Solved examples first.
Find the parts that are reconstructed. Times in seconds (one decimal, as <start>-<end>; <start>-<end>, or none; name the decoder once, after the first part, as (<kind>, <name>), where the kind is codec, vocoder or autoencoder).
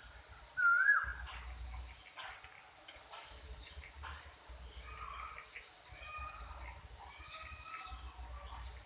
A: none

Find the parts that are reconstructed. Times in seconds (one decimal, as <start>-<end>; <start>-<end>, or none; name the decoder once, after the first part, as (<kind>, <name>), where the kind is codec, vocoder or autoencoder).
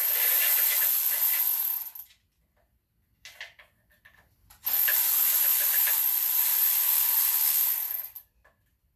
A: 5.5-6.6 (vocoder, BigVGAN v2)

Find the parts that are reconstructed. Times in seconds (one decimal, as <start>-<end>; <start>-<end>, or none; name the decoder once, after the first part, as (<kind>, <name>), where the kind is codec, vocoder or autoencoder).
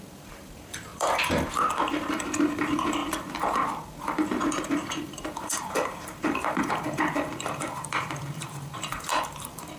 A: 0.0-9.8 (vocoder, BigVGAN v2)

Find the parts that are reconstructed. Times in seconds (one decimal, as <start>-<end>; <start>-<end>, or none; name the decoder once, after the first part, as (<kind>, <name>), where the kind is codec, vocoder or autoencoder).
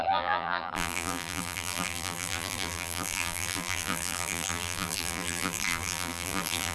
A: 0.0-6.7 (vocoder, BigVGAN v2)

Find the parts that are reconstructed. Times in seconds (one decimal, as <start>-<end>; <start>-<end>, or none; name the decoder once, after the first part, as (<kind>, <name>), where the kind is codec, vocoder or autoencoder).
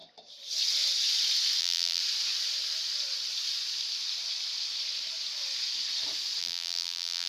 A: 1.6-2.0 (vocoder, BigVGAN v2); 6.4-7.3